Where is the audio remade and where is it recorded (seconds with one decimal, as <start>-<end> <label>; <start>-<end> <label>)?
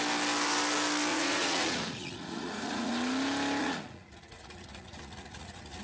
0.0-1.1 recorded; 1.1-2.9 remade; 2.9-3.6 recorded; 3.6-5.8 remade